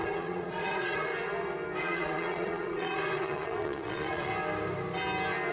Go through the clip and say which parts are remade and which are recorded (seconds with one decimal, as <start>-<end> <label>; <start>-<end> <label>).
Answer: 0.0-1.1 remade; 1.1-1.8 recorded; 1.8-4.3 remade; 4.3-5.5 recorded